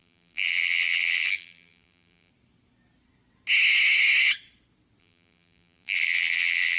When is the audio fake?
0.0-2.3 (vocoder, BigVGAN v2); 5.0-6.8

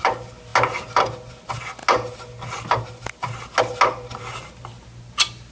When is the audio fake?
none